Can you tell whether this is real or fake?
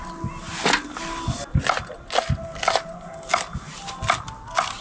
real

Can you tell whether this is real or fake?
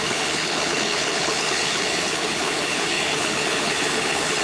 fake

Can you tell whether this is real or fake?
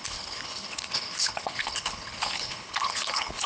fake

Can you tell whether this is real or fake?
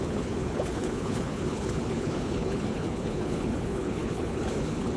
fake